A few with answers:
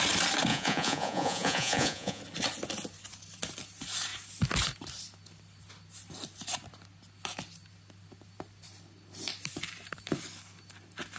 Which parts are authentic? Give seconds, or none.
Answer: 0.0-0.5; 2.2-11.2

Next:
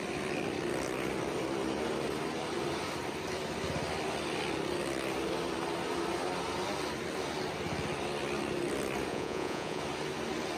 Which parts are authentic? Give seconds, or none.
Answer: 0.0-9.1; 9.8-10.6

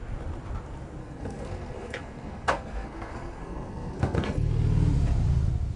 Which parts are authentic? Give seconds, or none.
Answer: 0.0-1.0; 4.5-5.8

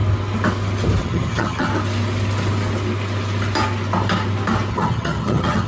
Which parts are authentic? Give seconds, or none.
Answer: 0.0-1.0; 1.7-4.7

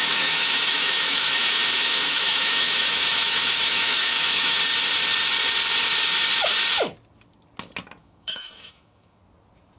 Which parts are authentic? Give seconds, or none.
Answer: 4.6-8.0; 9.2-9.8